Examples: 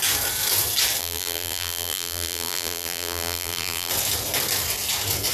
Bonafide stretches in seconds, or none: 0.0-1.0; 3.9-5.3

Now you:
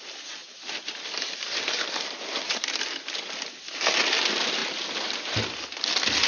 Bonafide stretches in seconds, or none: 0.0-0.4; 2.7-4.6; 5.2-6.3

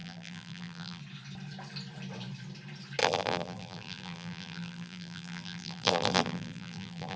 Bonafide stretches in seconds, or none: 1.0-3.0

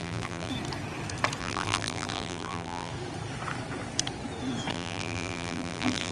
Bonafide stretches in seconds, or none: 0.5-1.4; 2.9-4.7

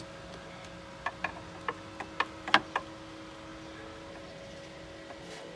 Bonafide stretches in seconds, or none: 0.0-5.6